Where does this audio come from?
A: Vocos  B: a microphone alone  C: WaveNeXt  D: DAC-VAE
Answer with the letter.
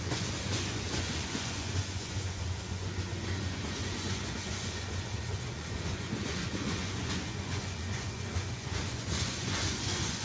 A